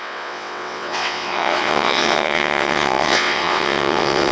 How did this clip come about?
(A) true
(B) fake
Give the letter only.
B